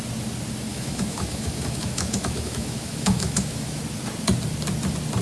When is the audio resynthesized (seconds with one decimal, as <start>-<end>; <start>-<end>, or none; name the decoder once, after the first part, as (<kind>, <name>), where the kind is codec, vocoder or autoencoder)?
0.7-3.8 (autoencoder, DAC-VAE)